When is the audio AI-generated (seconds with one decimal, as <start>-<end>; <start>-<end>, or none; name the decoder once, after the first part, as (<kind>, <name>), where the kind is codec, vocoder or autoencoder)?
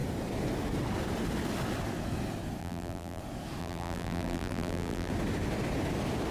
2.6-3.2 (vocoder, BigVGAN v2); 3.6-5.1